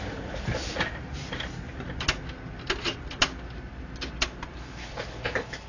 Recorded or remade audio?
recorded